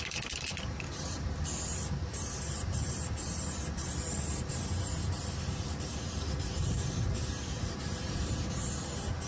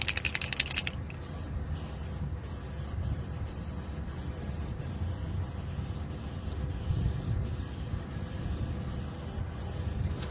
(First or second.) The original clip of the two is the second